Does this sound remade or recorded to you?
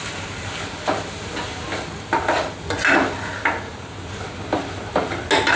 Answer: recorded